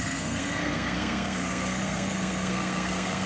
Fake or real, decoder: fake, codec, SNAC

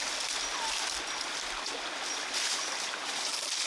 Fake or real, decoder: real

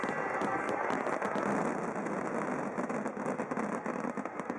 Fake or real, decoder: real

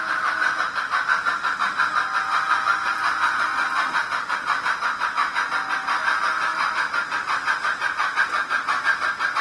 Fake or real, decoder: real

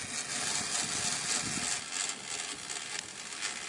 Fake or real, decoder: real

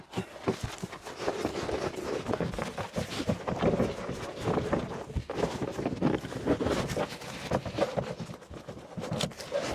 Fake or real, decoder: real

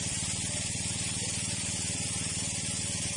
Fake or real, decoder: real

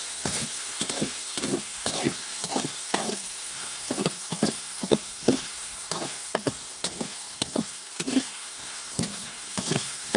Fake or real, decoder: fake, codec, SNAC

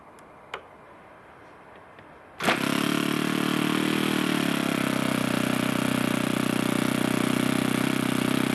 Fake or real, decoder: real